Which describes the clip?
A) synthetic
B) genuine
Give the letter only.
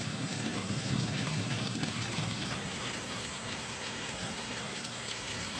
A